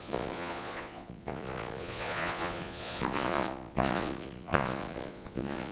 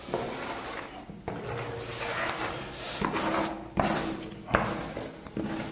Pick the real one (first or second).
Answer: second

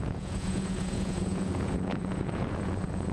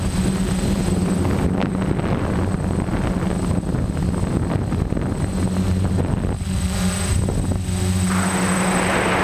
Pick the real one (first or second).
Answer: second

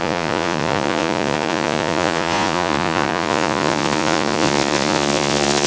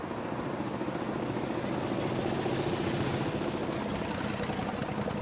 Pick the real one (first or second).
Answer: second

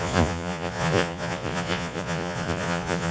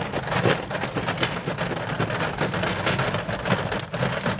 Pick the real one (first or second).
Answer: second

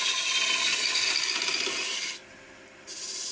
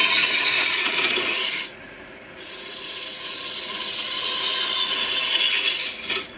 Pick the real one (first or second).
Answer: first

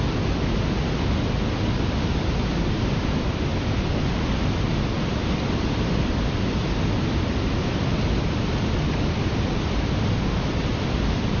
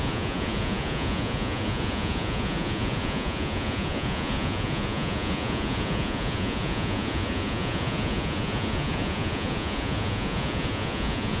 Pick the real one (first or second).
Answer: first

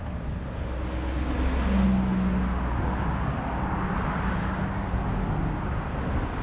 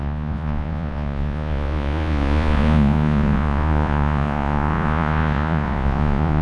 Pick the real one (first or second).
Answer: first